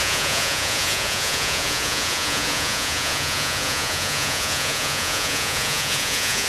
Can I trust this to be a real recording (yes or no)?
no